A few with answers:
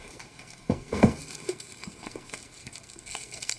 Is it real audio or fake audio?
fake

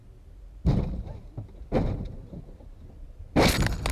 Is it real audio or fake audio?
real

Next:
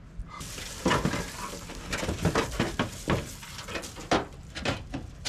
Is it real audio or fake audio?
fake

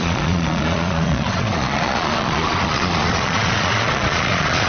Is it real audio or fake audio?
fake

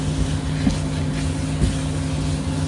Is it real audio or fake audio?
real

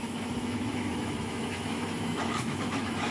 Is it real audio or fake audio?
fake